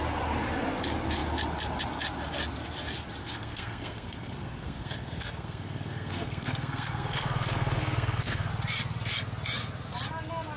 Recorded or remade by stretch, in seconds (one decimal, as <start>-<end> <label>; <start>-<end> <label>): 0.0-3.2 recorded; 3.2-8.5 remade; 8.5-10.6 recorded